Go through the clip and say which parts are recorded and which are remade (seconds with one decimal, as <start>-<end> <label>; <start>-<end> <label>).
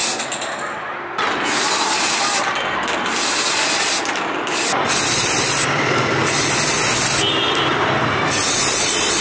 0.0-9.2 recorded